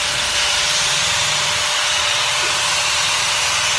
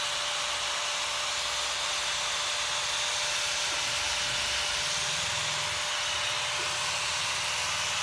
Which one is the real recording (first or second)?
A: second